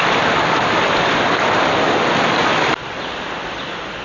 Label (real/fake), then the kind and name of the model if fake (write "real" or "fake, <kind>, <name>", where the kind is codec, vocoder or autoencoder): real